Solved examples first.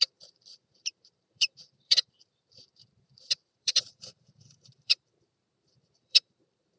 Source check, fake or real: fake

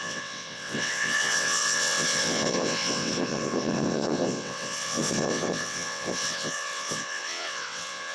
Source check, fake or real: fake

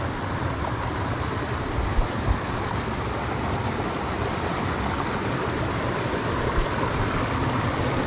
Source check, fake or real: real